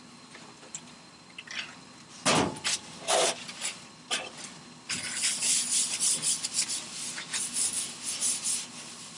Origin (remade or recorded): recorded